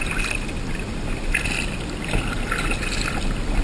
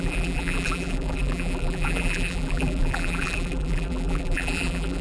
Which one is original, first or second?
first